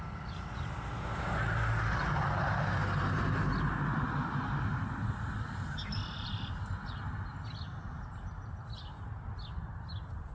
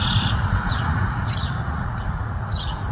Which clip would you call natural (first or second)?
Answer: first